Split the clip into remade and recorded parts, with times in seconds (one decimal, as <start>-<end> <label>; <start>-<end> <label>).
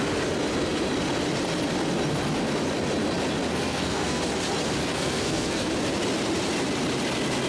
0.0-3.5 recorded; 3.5-4.2 remade; 4.2-4.9 recorded; 4.9-5.7 remade; 5.7-7.5 recorded